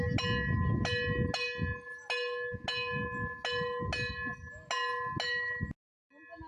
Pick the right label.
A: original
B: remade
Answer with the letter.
A